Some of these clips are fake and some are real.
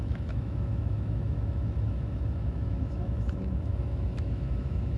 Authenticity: fake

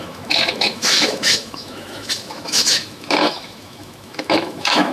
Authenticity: fake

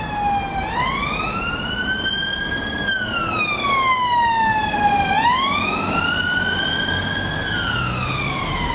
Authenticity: real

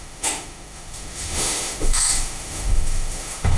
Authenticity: fake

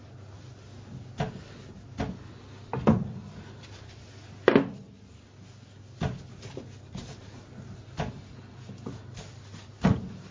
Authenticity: real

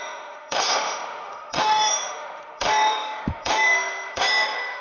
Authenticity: fake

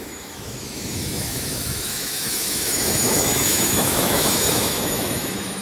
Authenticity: fake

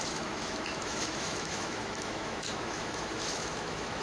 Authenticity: fake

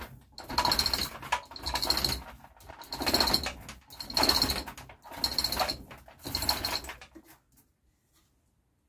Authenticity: real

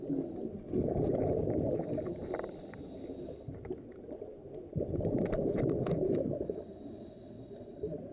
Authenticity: real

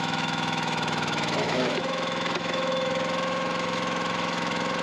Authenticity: fake